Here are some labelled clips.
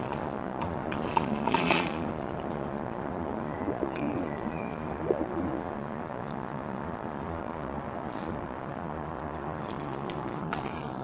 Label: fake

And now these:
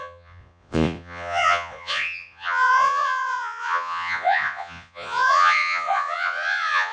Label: fake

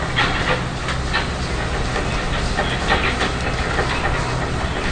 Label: real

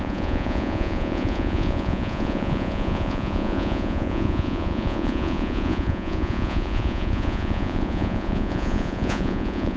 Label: fake